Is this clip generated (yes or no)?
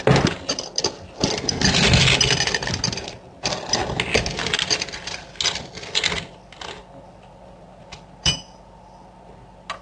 no